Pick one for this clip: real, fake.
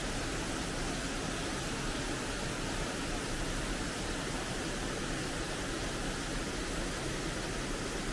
real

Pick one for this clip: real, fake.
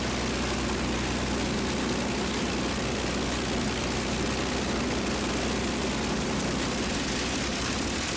real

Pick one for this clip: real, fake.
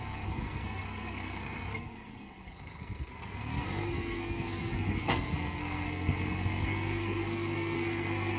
fake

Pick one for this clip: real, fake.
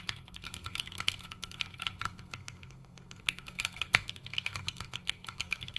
fake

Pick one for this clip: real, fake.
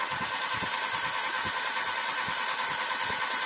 real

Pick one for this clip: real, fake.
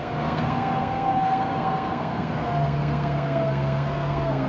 fake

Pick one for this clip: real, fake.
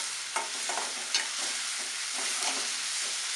real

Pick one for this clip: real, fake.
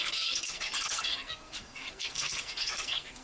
fake